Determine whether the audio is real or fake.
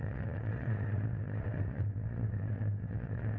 fake